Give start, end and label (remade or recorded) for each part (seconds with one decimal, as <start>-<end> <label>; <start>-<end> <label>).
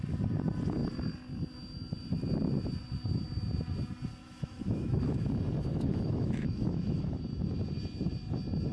0.0-4.2 recorded; 4.2-5.3 remade; 5.3-5.7 recorded; 5.7-7.2 remade; 7.2-8.7 recorded